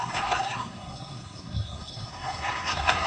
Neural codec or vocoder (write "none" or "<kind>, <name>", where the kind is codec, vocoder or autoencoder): codec, SNAC